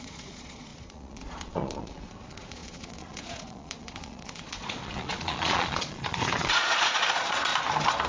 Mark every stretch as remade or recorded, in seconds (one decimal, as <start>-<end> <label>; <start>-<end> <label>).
0.0-7.5 remade; 7.5-8.1 recorded